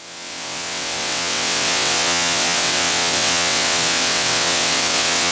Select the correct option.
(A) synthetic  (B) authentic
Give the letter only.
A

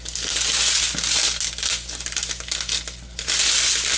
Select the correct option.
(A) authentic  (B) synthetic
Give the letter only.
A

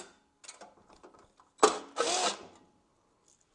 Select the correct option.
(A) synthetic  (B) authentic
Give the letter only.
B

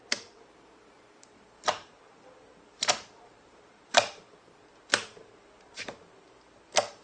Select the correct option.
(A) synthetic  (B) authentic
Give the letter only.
A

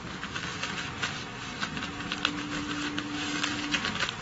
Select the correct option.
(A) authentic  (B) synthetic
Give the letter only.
A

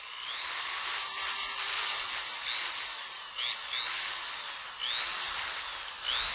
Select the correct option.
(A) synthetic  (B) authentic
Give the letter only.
B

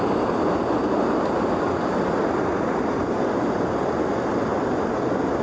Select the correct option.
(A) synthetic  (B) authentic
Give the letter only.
B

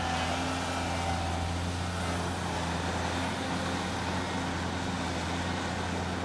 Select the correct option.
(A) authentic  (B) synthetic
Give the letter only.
A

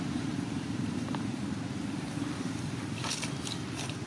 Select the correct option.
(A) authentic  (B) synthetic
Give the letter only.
B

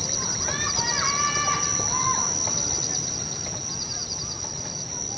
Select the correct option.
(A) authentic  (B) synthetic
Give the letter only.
A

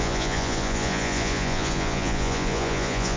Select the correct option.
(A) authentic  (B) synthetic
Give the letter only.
B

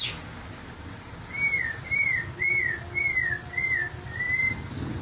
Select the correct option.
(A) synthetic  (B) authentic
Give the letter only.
B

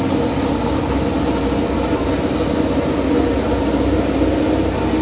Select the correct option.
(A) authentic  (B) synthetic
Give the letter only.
A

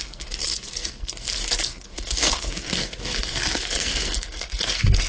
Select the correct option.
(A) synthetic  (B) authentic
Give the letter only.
A